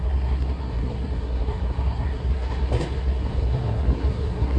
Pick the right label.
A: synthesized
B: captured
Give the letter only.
A